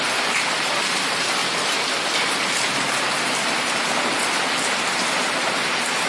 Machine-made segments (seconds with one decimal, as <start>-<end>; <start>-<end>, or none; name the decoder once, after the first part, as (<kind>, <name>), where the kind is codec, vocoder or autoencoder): 0.0-1.4 (vocoder, BigVGAN v2); 5.1-6.1

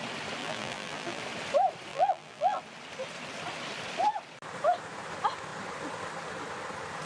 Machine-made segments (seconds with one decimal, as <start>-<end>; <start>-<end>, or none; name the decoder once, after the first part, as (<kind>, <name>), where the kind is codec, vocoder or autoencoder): 0.4-1.2 (vocoder, BigVGAN v2); 1.9-2.6

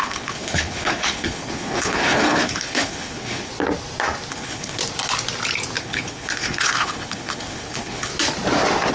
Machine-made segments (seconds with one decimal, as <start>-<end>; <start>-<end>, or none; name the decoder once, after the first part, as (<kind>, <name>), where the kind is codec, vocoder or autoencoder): 0.0-3.5 (codec, HILCodec); 4.3-4.8; 5.8-8.1